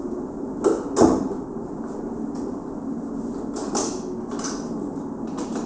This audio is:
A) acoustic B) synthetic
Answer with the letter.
A